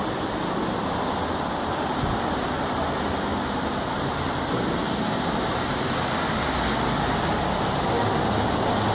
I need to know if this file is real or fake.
real